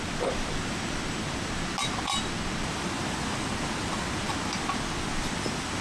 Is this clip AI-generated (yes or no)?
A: no